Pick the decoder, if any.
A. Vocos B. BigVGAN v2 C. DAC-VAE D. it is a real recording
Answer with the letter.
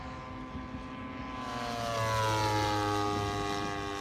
D